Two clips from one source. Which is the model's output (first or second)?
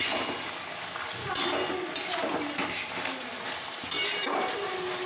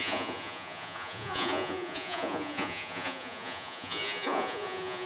second